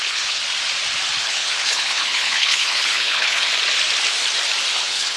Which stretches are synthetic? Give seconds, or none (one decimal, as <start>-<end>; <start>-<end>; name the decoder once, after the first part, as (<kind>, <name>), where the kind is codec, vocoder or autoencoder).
0.0-0.4 (codec, HILCodec); 1.2-3.5; 4.7-5.2